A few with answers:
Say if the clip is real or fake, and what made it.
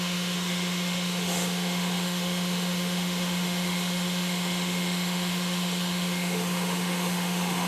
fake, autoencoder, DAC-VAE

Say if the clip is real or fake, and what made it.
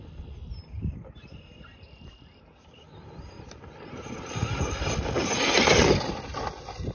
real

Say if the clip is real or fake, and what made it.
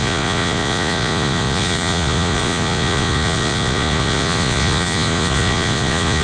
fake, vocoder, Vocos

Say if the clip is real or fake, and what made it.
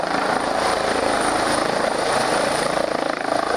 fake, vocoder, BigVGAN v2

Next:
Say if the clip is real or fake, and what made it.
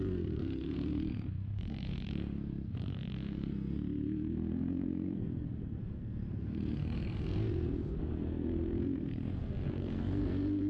fake, codec, SNAC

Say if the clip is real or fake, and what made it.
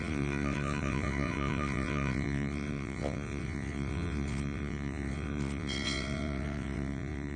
fake, vocoder, WaveNeXt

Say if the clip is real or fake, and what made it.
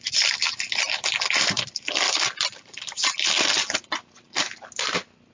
real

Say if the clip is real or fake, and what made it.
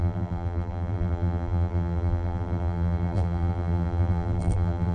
fake, vocoder, BigVGAN v2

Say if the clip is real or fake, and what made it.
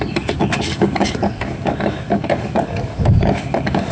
fake, codec, DAC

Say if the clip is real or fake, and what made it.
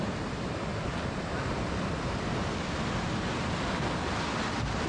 real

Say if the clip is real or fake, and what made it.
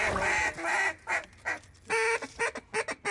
real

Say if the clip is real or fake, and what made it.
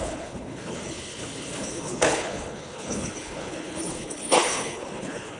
fake, codec, HILCodec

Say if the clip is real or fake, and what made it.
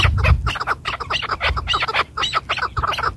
real